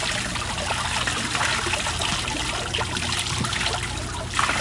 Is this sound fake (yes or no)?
no